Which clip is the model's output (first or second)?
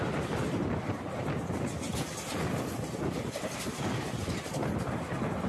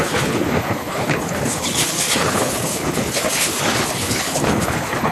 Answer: second